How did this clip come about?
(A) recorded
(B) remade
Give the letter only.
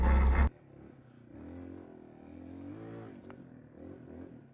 A